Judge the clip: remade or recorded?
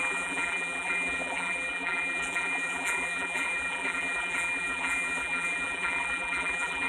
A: remade